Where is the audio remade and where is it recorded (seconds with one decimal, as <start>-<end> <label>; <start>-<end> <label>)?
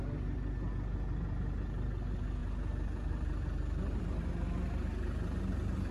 0.0-5.9 recorded